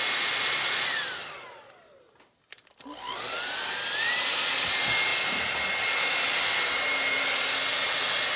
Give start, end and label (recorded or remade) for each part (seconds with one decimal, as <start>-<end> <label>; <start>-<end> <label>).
0.0-5.1 remade; 5.1-5.8 recorded; 5.8-8.4 remade